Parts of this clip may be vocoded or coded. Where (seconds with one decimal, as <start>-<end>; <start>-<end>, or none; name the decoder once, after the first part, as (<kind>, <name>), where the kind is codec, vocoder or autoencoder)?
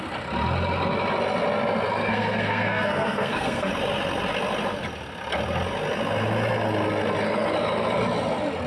2.1-3.7 (codec, SNAC)